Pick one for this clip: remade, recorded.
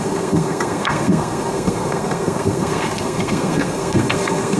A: remade